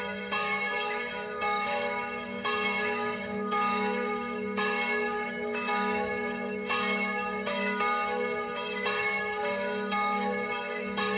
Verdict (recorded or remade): remade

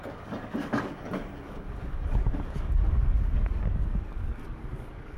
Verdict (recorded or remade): remade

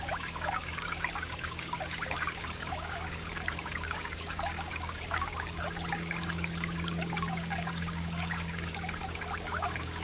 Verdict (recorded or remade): remade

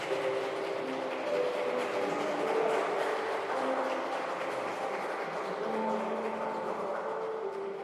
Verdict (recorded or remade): recorded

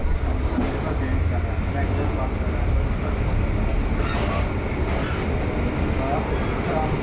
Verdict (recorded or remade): recorded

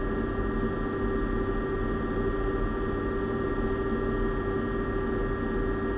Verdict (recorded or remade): recorded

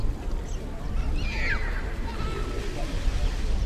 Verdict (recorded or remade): recorded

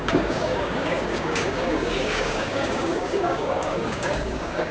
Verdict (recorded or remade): remade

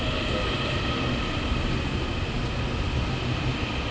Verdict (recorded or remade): recorded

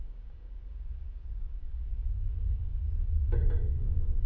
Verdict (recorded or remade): remade